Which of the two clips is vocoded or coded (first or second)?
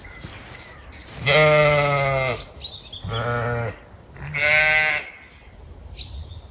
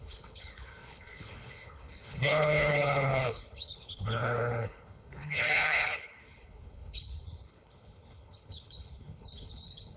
second